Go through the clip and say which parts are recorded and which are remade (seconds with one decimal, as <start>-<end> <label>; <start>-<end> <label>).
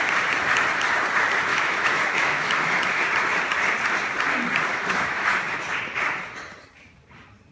0.0-1.5 recorded; 1.5-3.0 remade; 3.0-4.7 recorded; 4.7-5.3 remade; 5.3-7.5 recorded